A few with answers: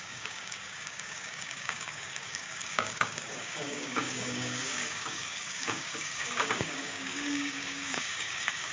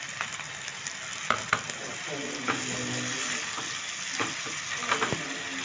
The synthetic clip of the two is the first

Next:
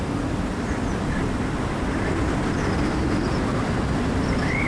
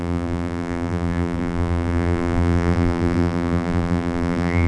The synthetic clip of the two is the second